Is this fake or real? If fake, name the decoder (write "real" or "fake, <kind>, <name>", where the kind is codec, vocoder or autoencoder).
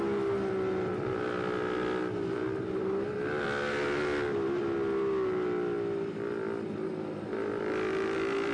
real